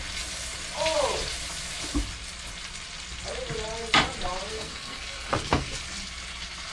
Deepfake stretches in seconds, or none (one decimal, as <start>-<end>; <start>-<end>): 4.5-5.8